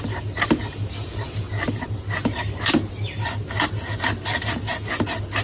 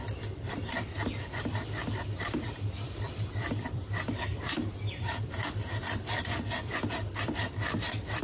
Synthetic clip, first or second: second